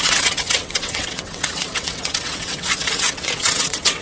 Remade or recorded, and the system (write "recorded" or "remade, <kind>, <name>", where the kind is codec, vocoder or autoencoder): remade, vocoder, WaveNeXt